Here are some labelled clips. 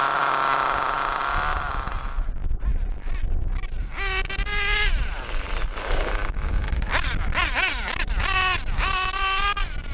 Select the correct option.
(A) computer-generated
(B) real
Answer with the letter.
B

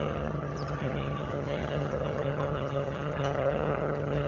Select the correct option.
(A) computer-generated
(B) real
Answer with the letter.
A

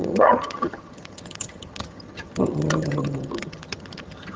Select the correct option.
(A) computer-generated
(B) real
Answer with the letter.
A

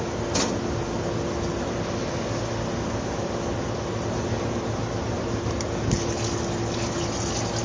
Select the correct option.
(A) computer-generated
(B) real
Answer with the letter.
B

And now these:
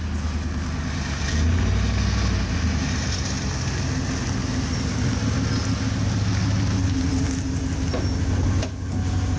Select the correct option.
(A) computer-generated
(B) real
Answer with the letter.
B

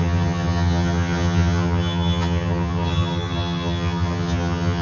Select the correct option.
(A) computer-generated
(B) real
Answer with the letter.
A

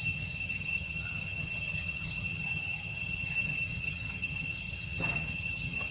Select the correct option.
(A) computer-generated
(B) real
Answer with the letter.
A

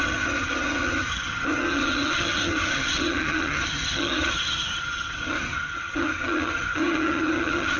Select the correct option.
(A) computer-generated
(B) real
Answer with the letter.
A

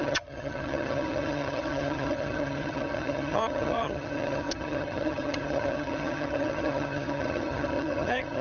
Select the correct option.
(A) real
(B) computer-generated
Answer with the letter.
B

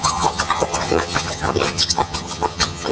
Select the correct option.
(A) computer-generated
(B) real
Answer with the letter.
A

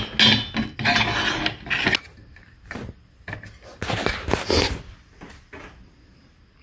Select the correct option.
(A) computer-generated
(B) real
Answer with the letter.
B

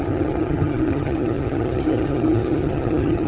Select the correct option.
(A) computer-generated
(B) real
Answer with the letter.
A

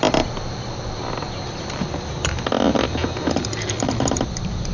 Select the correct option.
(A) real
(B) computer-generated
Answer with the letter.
A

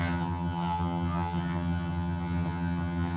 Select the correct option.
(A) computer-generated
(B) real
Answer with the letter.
A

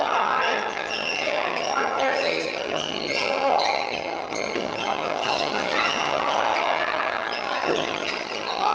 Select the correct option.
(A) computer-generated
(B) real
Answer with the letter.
A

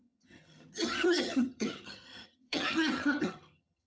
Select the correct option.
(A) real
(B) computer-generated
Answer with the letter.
B